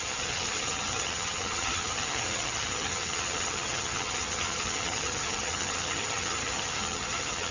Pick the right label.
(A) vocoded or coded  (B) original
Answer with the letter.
A